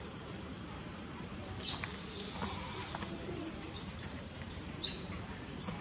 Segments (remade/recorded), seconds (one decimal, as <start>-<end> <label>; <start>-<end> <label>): 0.0-1.4 remade; 1.4-3.1 recorded; 3.1-5.8 remade